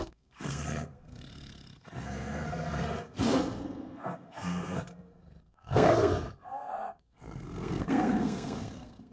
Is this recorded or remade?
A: remade